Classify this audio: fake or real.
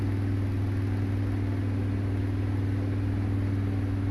real